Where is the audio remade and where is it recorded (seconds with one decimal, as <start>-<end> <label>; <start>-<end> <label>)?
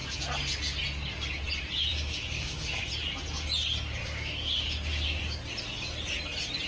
0.0-1.9 recorded; 1.9-2.9 remade; 2.9-4.0 recorded; 4.0-5.2 remade; 5.2-6.7 recorded